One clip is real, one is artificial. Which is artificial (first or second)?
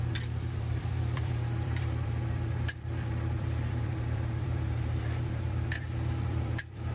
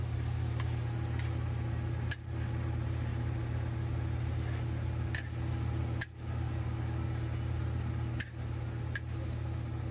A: first